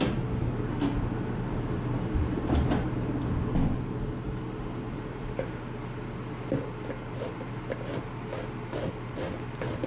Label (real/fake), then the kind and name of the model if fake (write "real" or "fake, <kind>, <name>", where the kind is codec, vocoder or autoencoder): real